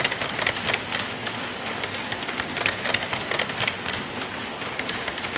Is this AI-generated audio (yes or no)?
no